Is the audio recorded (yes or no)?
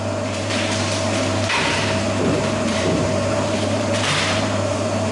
no